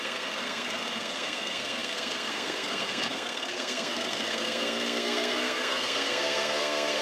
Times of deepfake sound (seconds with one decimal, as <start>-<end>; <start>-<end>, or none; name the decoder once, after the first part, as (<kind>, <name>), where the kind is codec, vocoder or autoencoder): 0.0-7.0 (codec, SNAC)